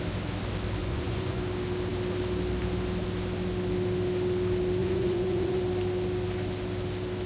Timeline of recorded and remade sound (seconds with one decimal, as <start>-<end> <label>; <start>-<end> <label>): 0.0-0.8 recorded; 0.8-1.4 remade; 1.4-4.8 recorded; 4.8-5.6 remade; 5.6-7.3 recorded